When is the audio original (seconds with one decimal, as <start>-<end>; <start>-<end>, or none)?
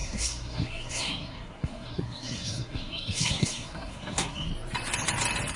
4.5-5.6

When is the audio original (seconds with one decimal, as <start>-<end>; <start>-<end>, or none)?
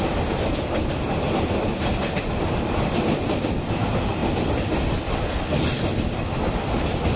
0.0-7.2